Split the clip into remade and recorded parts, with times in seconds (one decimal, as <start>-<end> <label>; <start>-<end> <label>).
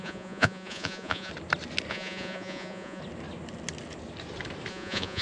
0.0-1.3 remade; 1.3-1.9 recorded; 1.9-3.0 remade; 3.0-4.7 recorded; 4.7-5.2 remade